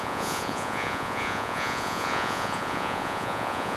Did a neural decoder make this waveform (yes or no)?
yes